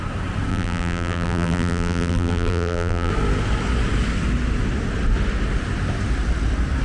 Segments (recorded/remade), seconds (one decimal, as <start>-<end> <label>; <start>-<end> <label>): 0.0-0.5 recorded; 0.5-3.1 remade; 3.1-6.8 recorded